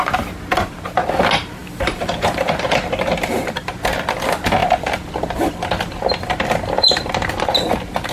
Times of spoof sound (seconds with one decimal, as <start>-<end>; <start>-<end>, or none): 1.6-3.7; 4.6-7.3